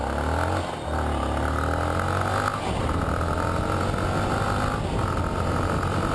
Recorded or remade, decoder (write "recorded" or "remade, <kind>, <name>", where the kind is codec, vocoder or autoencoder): recorded